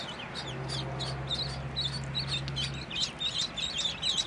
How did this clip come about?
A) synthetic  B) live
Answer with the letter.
B